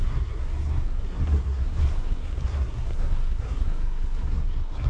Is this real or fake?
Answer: fake